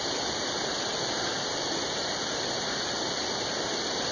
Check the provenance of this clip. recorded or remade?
recorded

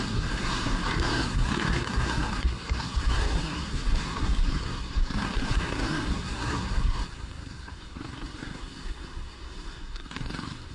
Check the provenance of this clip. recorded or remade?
remade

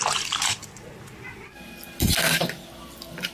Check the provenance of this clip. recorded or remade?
recorded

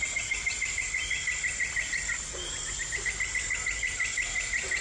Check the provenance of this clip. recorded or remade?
recorded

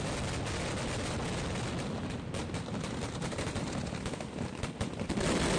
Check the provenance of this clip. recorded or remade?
recorded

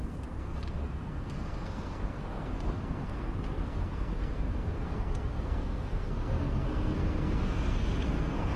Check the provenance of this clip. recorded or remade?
remade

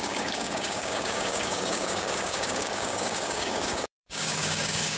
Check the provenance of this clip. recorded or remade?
remade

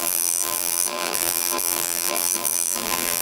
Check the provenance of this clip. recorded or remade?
remade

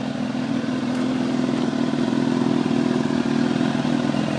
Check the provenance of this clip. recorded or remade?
recorded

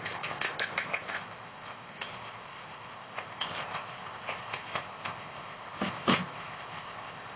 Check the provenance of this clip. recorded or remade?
remade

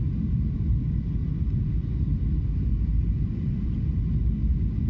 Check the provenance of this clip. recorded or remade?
recorded